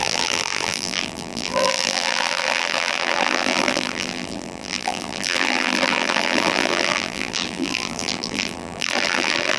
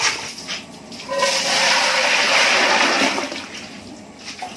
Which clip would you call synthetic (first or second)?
first